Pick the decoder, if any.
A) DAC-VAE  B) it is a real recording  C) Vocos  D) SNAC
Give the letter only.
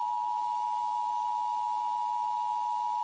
A